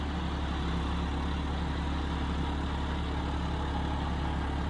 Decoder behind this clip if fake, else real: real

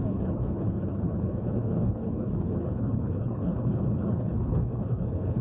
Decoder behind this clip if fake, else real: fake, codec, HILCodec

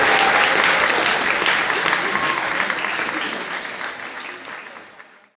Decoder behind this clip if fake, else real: real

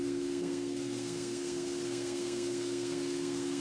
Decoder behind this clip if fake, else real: fake, codec, SNAC